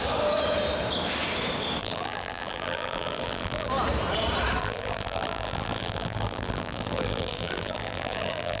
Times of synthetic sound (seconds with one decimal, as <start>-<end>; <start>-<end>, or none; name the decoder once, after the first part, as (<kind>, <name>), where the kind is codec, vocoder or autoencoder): 1.8-3.7 (vocoder, BigVGAN v2); 4.6-8.6